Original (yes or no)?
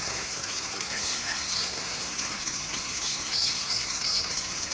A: no